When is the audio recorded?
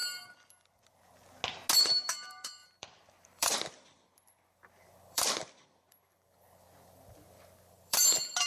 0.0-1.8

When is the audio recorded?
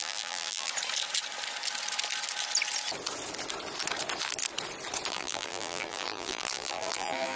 0.7-5.1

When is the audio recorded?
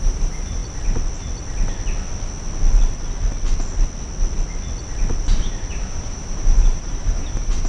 0.6-5.2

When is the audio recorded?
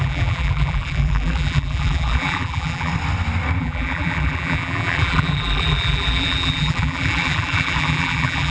2.9-3.6